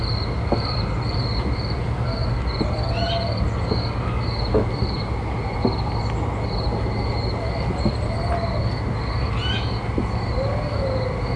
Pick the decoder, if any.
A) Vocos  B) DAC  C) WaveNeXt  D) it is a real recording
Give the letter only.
D